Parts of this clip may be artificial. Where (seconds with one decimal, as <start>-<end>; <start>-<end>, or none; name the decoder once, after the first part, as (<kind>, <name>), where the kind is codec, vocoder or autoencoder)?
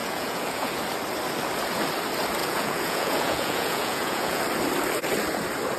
0.0-0.8 (vocoder, Vocos); 2.4-4.4